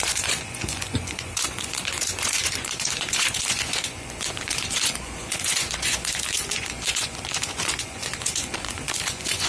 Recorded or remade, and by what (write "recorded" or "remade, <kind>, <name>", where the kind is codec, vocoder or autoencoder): remade, vocoder, Vocos